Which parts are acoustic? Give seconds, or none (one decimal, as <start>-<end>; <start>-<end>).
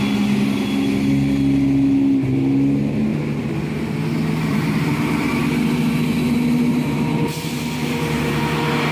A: 0.0-3.1; 3.9-4.5; 5.4-6.7; 8.4-8.9